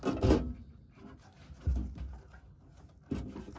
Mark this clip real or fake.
real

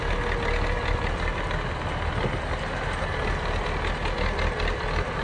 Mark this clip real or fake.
real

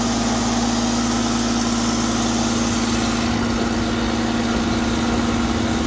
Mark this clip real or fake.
real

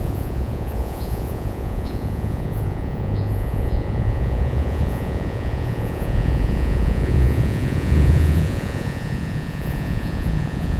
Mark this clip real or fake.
fake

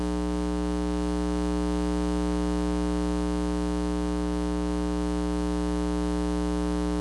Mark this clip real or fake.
real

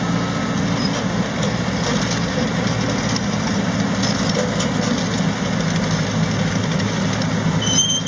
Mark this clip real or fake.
real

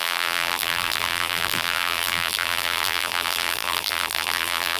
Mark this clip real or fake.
fake